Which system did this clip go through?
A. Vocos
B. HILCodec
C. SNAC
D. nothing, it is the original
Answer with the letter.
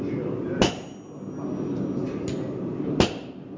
D